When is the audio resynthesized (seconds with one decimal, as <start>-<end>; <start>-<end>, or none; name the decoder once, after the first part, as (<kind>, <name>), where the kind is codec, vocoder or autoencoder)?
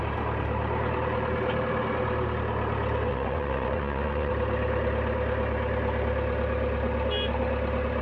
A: 3.1-4.3 (vocoder, Vocos)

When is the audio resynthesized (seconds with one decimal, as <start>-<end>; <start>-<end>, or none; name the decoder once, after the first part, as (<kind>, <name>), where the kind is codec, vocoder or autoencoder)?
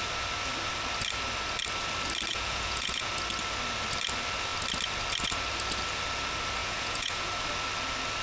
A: 2.3-3.1 (vocoder, Vocos); 6.6-7.3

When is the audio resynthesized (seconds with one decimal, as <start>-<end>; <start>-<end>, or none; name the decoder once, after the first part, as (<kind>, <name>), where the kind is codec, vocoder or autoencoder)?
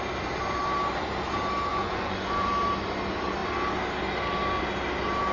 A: 1.7-2.5 (vocoder, Vocos)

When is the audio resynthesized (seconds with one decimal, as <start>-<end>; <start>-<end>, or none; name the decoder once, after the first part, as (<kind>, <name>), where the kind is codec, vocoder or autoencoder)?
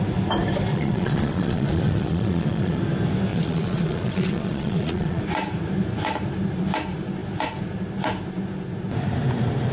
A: 0.7-2.8 (vocoder, Vocos); 3.3-5.2